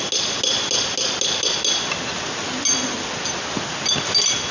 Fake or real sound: real